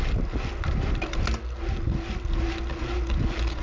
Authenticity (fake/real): real